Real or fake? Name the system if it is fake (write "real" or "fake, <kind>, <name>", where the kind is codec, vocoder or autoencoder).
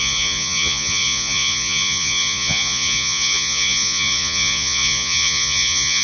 fake, vocoder, Vocos